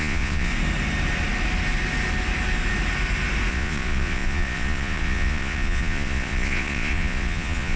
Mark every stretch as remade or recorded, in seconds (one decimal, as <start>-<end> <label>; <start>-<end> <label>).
0.0-0.5 remade; 0.5-3.5 recorded; 3.5-7.8 remade